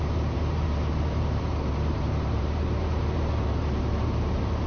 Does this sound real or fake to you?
fake